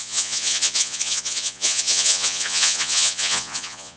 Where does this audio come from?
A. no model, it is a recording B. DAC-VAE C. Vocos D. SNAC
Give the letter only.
C